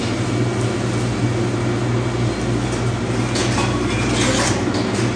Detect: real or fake real